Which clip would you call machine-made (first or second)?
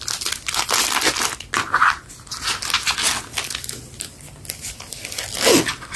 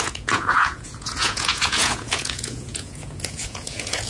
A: second